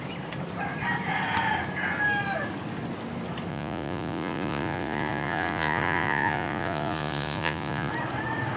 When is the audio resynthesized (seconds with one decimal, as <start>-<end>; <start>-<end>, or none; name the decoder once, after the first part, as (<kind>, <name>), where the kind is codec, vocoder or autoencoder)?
3.5-7.9 (vocoder, Vocos)